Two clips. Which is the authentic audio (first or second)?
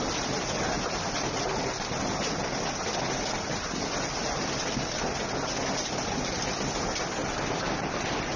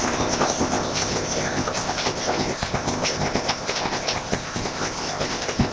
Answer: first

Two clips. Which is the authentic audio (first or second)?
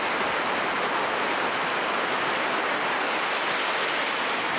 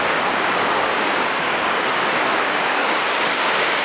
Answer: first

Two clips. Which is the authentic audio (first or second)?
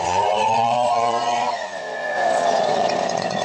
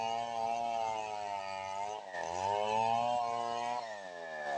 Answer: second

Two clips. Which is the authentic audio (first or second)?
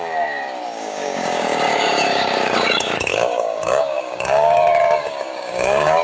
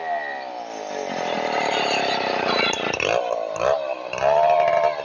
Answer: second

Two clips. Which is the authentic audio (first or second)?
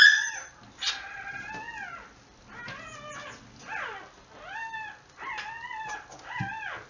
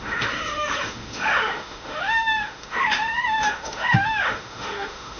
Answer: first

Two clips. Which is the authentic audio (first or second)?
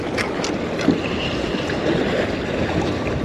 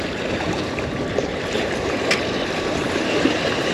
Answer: first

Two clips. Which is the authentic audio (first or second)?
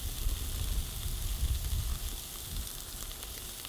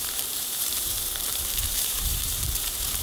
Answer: first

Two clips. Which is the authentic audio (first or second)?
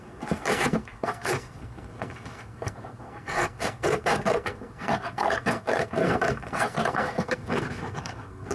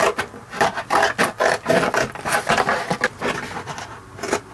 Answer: second